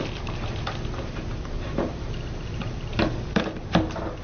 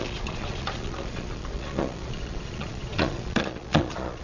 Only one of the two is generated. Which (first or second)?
second